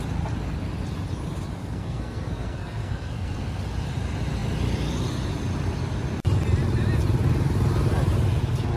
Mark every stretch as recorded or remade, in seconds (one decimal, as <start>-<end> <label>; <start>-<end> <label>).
0.0-1.6 recorded; 1.6-3.6 remade; 3.6-8.8 recorded